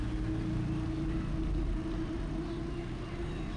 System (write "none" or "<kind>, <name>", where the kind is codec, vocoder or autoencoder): none